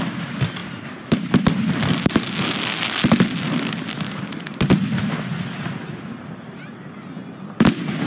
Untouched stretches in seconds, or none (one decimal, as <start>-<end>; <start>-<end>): 0.0-8.1